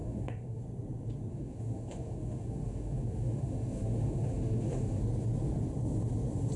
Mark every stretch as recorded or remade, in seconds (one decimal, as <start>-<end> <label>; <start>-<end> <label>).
0.0-0.6 remade; 0.6-1.3 recorded; 1.3-5.0 remade; 5.0-6.6 recorded